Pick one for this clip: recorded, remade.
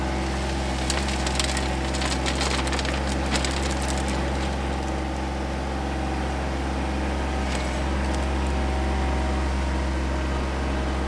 recorded